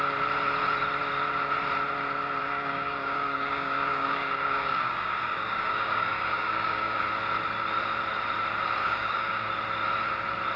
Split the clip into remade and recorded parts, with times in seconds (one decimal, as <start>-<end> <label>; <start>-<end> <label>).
0.0-2.4 recorded; 2.4-7.0 remade; 7.0-8.8 recorded; 8.8-9.5 remade; 9.5-10.6 recorded